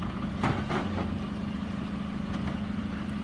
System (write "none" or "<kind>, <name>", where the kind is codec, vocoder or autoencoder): none